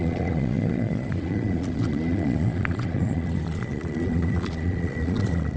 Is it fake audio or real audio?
fake